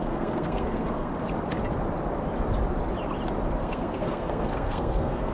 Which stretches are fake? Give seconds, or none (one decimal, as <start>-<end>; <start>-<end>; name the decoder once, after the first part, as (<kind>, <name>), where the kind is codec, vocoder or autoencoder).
0.0-1.1 (codec, SNAC); 3.6-5.3